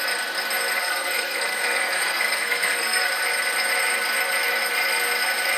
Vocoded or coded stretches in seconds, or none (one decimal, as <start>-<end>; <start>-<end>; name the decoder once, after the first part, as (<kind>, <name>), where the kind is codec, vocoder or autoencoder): 0.8-3.1 (codec, SNAC)